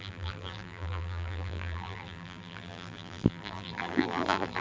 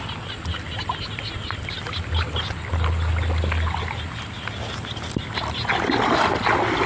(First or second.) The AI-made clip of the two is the first